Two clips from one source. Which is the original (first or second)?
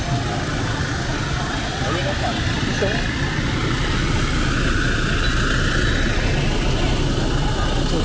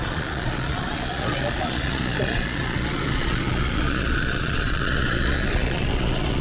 first